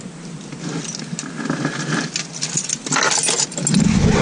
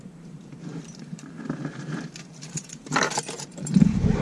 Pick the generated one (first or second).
second